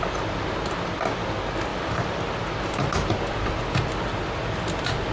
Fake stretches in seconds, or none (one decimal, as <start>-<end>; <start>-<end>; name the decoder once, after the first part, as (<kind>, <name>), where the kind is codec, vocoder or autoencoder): 1.7-2.2 (vocoder, BigVGAN v2)